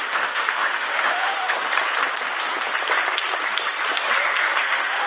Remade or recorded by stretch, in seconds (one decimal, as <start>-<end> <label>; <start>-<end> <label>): 0.0-1.5 remade; 1.5-4.6 recorded; 4.6-5.1 remade